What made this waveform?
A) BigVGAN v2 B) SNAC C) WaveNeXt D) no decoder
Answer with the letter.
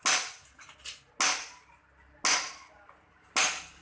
D